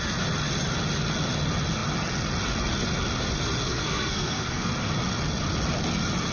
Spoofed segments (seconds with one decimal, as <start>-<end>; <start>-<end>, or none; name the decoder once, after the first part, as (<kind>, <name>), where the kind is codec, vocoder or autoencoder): 3.6-4.7 (codec, SNAC)